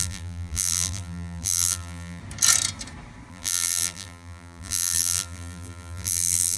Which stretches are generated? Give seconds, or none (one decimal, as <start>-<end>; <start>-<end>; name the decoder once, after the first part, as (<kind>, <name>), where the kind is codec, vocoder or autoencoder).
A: 0.0-2.2 (vocoder, BigVGAN v2); 3.3-6.6